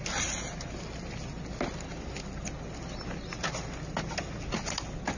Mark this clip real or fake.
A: real